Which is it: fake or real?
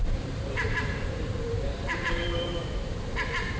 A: fake